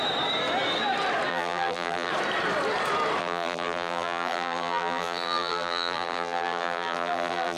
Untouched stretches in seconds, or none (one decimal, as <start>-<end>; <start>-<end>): 0.0-1.3; 2.1-3.2